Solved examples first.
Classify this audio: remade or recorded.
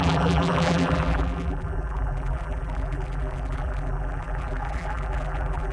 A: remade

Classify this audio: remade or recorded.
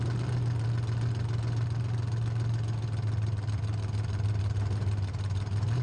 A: recorded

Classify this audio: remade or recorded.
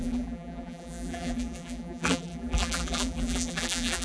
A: remade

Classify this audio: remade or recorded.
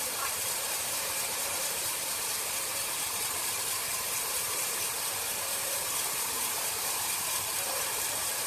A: remade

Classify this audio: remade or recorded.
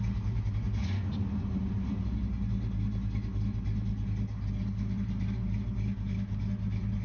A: recorded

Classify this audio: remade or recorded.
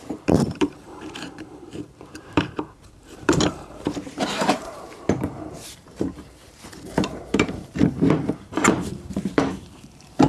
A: remade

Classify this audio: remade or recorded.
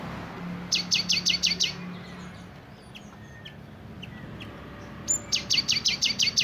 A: recorded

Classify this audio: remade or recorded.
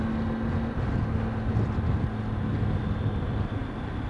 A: recorded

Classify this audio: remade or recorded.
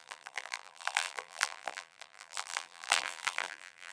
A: remade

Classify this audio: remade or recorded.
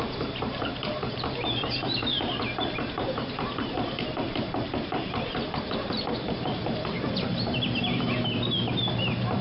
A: remade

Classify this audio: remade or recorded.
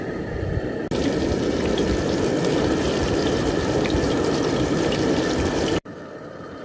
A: recorded